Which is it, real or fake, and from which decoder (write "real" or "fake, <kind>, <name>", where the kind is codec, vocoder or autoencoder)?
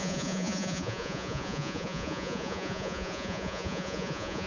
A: fake, vocoder, Vocos